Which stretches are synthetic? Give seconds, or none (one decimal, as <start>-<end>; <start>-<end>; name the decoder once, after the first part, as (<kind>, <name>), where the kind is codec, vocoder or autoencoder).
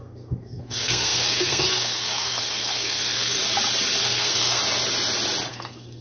0.0-3.4 (codec, SNAC); 4.0-4.6; 5.5-6.0